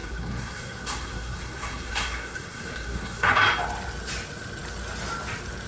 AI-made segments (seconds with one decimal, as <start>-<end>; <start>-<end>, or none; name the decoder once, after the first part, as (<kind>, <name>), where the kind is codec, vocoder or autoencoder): 0.0-3.3 (codec, SNAC)